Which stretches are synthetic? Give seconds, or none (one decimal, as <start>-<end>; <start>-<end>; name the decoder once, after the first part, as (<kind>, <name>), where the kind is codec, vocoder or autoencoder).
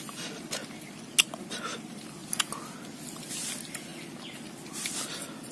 none